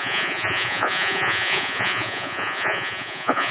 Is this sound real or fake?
fake